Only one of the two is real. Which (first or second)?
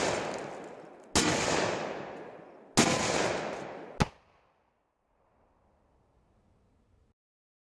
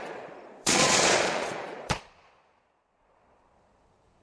first